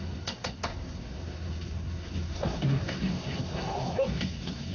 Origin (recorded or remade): remade